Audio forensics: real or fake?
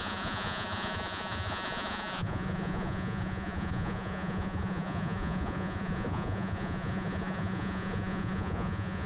fake